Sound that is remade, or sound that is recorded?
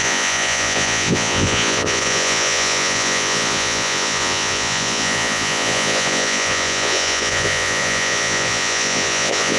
remade